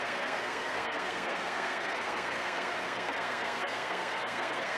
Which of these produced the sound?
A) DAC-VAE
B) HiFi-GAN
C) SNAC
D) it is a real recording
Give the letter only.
C